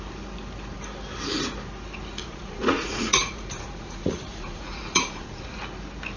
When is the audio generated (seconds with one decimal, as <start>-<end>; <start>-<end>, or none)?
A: 2.2-5.6